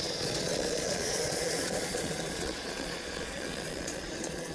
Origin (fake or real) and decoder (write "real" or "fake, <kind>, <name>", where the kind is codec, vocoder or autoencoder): fake, vocoder, Vocos